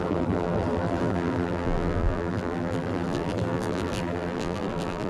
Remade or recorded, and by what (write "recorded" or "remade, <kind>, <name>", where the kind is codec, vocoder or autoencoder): remade, vocoder, BigVGAN v2